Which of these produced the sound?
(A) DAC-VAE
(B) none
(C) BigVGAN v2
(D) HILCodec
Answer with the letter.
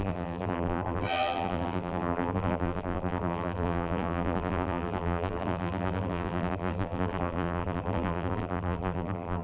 C